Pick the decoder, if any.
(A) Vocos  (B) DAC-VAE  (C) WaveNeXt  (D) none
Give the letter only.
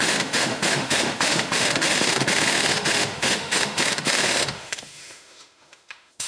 B